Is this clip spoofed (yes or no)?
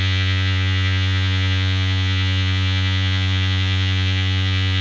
yes